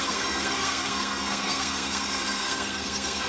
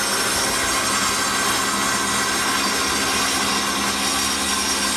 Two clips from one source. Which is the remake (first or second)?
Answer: first